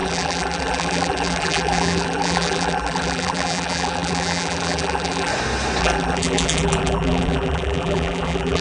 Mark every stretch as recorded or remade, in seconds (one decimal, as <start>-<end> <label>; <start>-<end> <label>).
0.0-5.3 remade; 5.3-5.8 recorded; 5.8-8.6 remade